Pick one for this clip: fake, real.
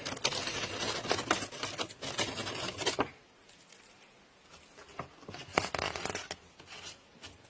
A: real